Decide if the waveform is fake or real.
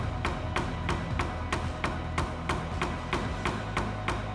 real